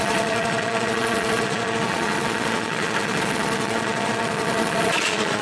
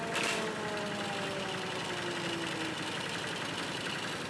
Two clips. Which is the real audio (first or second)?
second